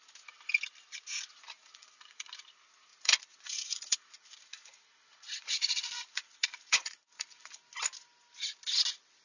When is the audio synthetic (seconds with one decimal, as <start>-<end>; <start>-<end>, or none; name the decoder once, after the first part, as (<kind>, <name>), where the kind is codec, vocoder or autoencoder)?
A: 1.6-2.3 (vocoder, Vocos); 2.9-7.6